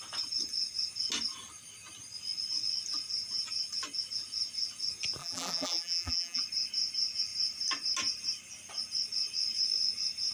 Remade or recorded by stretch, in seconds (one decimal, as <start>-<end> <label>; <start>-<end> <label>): 0.0-5.2 recorded; 5.2-6.4 remade; 6.4-10.3 recorded